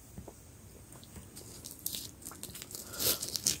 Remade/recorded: recorded